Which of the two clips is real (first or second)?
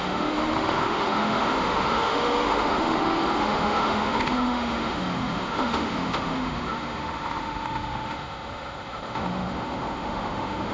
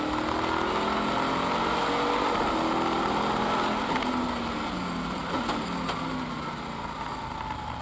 second